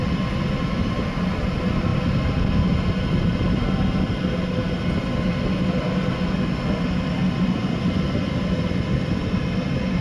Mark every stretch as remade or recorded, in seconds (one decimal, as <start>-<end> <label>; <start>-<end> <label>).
0.0-10.0 recorded